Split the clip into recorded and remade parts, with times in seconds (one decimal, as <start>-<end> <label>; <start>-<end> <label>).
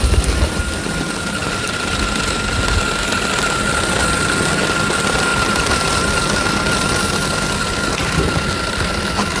0.0-1.4 recorded; 1.4-2.2 remade; 2.2-5.3 recorded; 5.3-6.6 remade; 6.6-8.0 recorded; 8.0-9.0 remade; 9.0-9.4 recorded